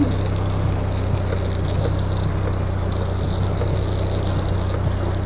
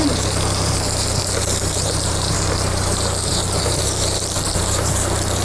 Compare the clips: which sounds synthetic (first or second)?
second